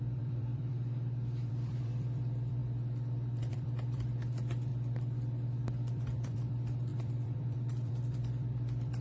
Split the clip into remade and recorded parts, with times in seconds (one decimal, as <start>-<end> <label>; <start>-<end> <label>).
0.0-0.7 remade; 0.7-1.5 recorded; 1.5-2.6 remade; 2.6-3.4 recorded; 3.4-4.7 remade; 4.7-5.9 recorded; 5.9-9.0 remade